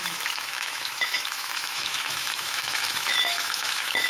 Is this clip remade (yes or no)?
yes